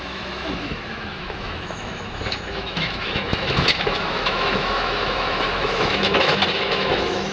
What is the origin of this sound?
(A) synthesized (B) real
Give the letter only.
A